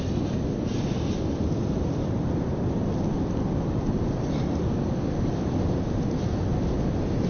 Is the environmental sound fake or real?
real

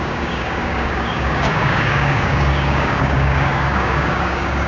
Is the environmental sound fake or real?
fake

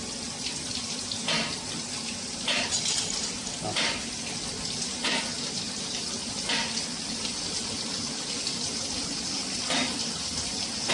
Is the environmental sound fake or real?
real